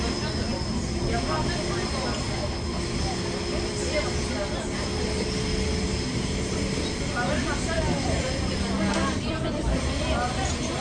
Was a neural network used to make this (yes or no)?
no